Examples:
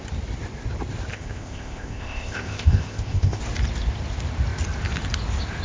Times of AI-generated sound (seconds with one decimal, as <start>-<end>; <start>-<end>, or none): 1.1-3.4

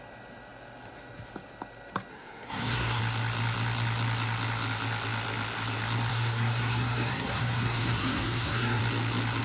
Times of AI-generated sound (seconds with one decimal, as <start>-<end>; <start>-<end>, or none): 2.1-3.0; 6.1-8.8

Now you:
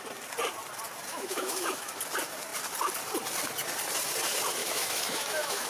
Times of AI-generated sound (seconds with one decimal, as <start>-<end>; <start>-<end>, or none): 1.1-1.9; 4.6-5.7

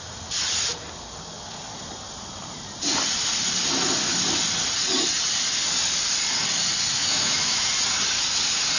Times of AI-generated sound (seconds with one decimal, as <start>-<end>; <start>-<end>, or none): 7.0-7.7

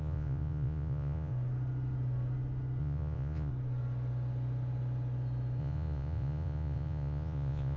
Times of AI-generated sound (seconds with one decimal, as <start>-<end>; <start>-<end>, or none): 0.0-1.3; 2.8-3.5; 5.6-7.8

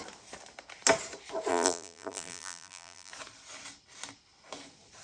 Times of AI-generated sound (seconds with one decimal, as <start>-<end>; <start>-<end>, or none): 1.5-3.1

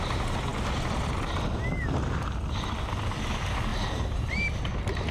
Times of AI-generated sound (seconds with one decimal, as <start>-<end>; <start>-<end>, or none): 3.7-4.3

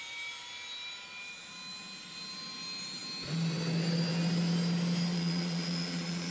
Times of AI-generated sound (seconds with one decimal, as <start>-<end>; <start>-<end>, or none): 5.1-6.3